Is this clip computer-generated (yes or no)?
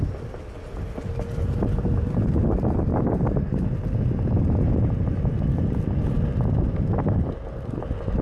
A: no